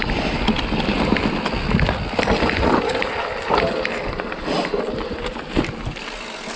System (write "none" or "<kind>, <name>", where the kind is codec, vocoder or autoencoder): none